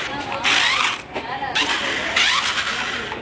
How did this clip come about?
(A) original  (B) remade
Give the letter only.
A